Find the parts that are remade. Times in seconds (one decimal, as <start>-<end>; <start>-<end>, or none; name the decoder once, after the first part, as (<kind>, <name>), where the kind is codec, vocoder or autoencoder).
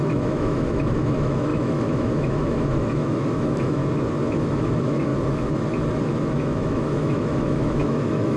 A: 0.0-3.8 (autoencoder, DAC-VAE); 4.4-5.1; 6.3-8.4